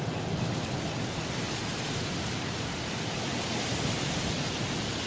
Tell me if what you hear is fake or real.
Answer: real